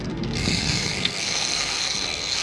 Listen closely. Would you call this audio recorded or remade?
remade